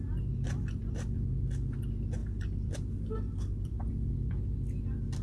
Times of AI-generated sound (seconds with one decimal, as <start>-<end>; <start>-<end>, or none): 2.2-3.8